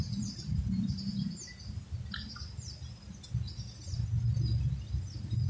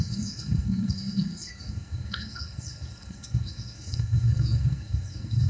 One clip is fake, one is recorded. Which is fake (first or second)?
second